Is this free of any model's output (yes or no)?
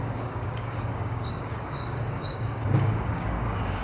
no